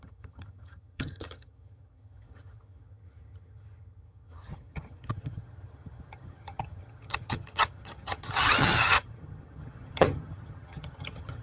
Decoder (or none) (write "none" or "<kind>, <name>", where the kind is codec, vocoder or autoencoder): vocoder, HiFi-GAN